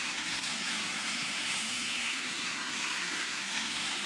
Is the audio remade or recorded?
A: remade